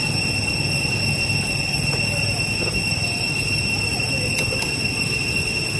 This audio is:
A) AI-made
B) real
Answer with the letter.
B